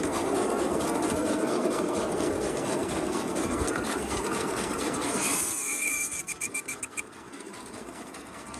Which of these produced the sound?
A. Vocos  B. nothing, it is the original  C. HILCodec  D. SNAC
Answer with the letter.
D